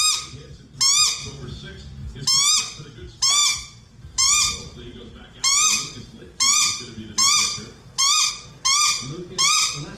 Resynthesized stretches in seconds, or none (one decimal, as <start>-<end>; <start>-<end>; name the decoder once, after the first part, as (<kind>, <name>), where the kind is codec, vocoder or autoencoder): 3.4-8.3 (vocoder, BigVGAN v2)